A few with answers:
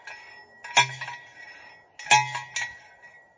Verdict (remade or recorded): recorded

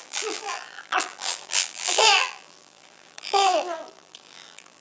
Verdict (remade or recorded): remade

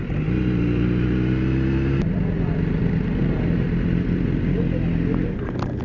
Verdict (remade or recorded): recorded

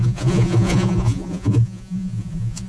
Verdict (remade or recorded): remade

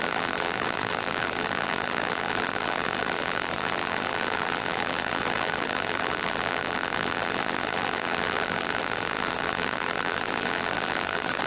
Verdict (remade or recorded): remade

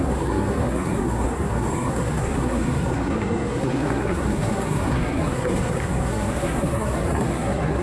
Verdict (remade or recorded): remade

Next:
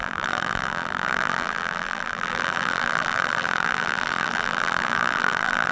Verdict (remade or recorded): remade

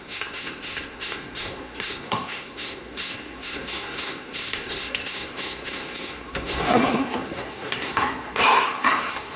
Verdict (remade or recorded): remade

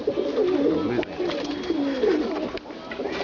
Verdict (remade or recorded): recorded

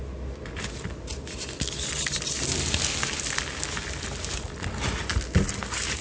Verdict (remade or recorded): recorded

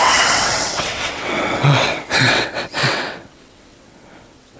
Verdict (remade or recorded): remade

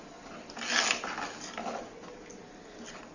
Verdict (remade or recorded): recorded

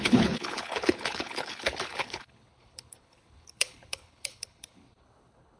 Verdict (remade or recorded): remade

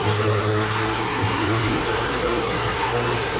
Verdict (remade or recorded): remade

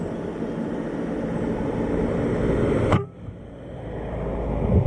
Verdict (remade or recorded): recorded